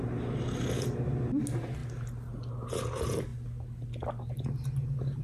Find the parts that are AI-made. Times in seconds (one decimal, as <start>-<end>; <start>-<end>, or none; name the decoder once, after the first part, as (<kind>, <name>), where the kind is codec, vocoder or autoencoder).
none